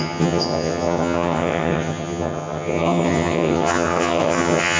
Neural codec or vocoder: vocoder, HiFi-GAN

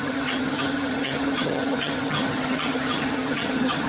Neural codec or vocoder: vocoder, HiFi-GAN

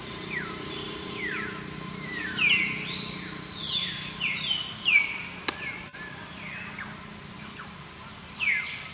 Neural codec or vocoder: none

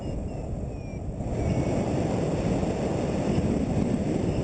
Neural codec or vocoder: none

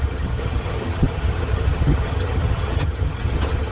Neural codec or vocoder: vocoder, HiFi-GAN